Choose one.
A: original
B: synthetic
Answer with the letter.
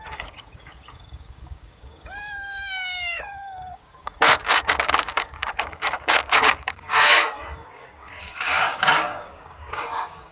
B